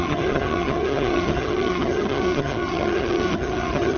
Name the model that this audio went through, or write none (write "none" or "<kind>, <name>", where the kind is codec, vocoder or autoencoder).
vocoder, HiFi-GAN